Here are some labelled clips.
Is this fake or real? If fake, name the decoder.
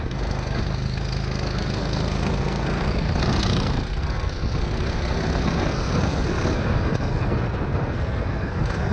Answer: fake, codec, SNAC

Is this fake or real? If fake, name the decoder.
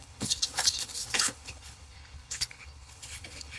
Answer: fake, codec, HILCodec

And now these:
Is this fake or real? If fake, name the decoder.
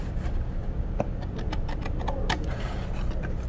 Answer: real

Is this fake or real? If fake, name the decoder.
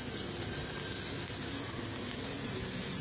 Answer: real